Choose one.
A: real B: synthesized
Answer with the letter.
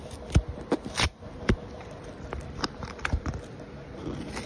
B